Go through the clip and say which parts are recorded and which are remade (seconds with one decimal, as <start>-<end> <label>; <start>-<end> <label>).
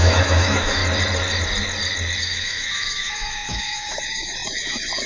0.0-0.8 remade; 0.8-2.2 recorded; 2.2-5.1 remade